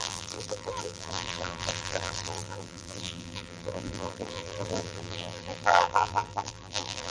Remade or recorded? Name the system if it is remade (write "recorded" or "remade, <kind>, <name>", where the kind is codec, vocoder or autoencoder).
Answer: remade, vocoder, BigVGAN v2